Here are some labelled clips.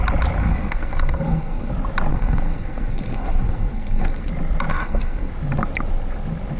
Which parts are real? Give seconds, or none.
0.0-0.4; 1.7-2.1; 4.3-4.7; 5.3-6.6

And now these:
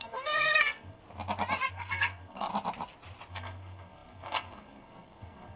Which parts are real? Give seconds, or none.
1.0-1.7; 2.5-3.3